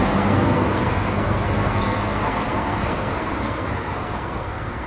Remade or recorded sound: remade